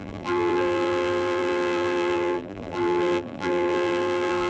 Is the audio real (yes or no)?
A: no